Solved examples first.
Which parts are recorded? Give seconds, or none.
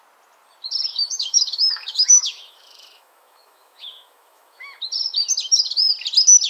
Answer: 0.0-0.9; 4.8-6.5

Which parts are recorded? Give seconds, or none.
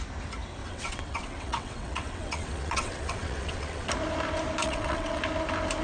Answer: 0.0-0.6; 3.9-4.6; 5.2-5.8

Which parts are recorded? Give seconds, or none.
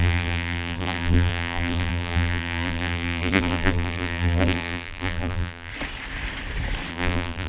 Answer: 5.7-6.9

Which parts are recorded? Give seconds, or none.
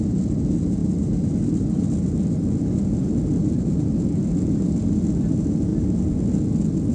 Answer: 0.0-0.8; 4.8-5.7; 6.3-6.9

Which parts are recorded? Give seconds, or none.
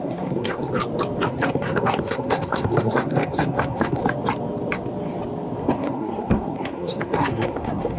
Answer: 0.7-1.3; 4.0-5.6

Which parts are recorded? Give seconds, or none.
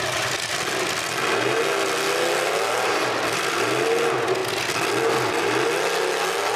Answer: 0.0-6.6